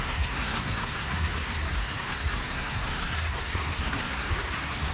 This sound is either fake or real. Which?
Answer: fake